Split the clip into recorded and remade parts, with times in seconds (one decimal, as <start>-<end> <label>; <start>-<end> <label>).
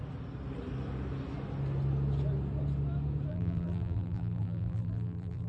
0.0-3.3 recorded; 3.3-5.5 remade